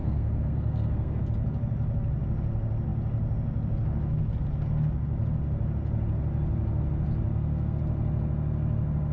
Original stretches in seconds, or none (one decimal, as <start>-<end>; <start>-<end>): 1.2-7.3; 7.8-9.1